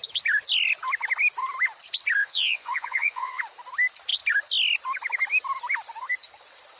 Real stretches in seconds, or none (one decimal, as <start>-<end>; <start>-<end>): 0.0-2.2; 3.4-6.8